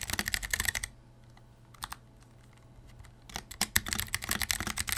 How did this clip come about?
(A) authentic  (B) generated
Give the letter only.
A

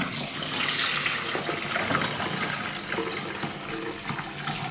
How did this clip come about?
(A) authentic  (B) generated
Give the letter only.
A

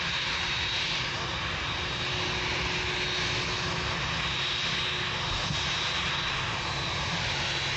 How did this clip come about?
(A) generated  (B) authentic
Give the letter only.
B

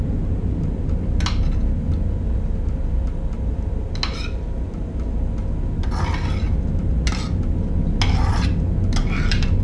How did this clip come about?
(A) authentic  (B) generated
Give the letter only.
A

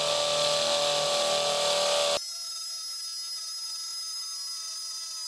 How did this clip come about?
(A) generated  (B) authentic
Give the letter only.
B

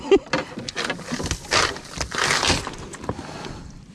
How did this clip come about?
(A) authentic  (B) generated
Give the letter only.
A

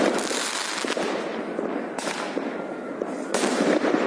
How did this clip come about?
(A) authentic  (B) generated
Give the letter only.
A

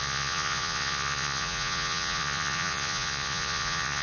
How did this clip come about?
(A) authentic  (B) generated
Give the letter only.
B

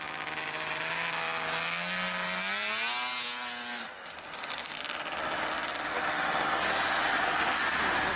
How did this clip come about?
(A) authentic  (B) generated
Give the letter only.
A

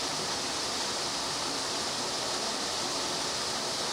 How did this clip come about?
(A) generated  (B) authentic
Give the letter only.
A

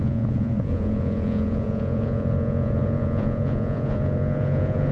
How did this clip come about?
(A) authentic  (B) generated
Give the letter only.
B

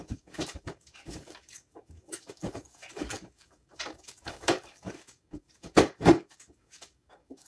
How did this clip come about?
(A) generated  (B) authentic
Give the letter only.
A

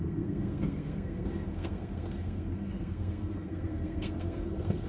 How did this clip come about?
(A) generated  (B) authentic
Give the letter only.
A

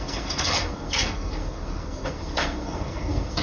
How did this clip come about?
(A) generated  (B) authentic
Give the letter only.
A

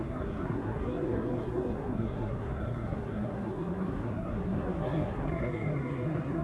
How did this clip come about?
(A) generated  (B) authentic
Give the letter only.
A